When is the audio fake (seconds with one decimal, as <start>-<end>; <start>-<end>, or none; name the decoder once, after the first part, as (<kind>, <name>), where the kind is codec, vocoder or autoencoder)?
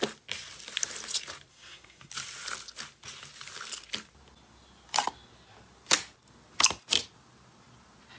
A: 1.5-2.1 (codec, SNAC)